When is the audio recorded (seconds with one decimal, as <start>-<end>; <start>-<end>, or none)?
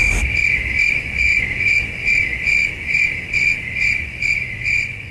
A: 0.0-0.9